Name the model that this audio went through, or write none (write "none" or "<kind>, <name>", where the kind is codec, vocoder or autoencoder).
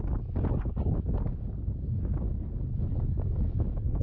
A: none